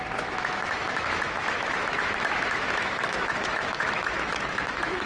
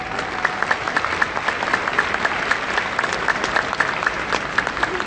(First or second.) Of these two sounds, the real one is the second